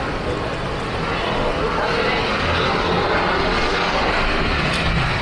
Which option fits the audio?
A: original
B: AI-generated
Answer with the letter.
A